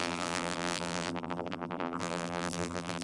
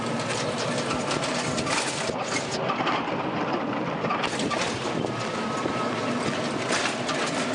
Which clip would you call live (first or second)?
second